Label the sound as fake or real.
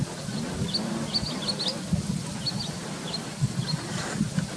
real